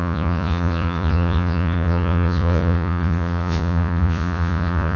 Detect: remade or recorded remade